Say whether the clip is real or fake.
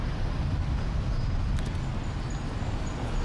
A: real